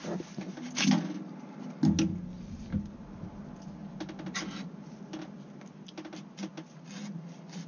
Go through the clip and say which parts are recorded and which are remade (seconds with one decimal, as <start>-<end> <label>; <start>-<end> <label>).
0.0-7.7 recorded